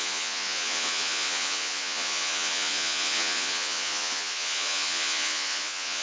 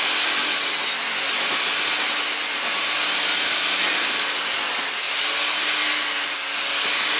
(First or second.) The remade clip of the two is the first